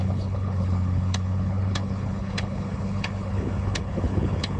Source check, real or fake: fake